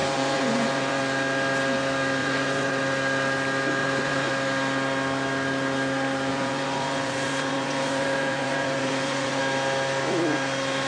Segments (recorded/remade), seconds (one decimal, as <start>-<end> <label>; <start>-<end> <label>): 0.0-1.0 remade; 1.0-2.2 recorded; 2.2-2.8 remade; 2.8-3.8 recorded; 3.8-4.3 remade; 4.3-6.3 recorded; 6.3-9.4 remade; 9.4-10.9 recorded